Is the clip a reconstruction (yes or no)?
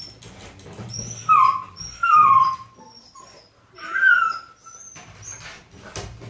no